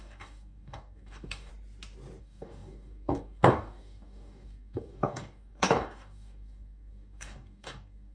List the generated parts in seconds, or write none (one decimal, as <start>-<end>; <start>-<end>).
0.0-1.5; 2.2-8.1